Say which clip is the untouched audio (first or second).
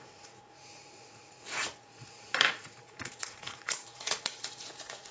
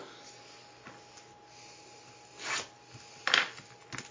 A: second